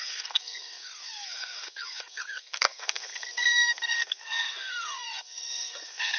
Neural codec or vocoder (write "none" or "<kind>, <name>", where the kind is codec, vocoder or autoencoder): codec, SNAC